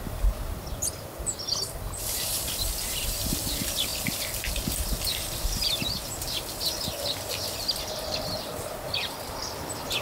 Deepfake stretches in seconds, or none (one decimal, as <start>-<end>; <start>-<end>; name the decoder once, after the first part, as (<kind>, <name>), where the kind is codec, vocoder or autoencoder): 0.0-3.9 (vocoder, BigVGAN v2); 7.5-10.0